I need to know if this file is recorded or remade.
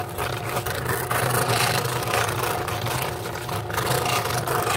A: recorded